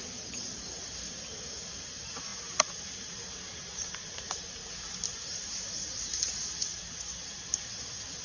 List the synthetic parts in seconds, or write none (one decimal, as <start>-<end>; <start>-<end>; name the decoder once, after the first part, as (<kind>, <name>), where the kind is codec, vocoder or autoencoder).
4.6-7.7 (vocoder, BigVGAN v2)